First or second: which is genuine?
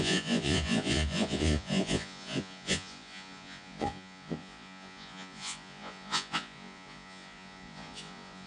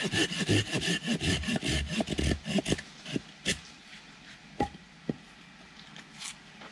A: second